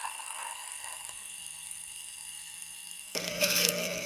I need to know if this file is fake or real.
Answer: fake